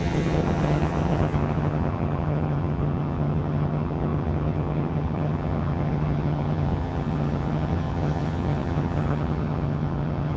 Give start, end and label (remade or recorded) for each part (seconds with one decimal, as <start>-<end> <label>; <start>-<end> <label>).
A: 0.0-10.4 remade